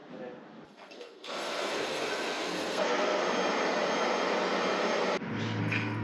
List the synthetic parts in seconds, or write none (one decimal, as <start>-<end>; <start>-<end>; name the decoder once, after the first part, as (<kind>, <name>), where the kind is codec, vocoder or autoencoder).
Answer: 0.7-3.2 (codec, SNAC); 5.6-6.0

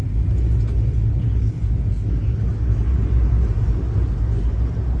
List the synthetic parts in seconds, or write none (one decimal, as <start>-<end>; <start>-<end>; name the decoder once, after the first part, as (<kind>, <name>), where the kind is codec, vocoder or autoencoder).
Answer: 1.1-1.7 (codec, HILCodec)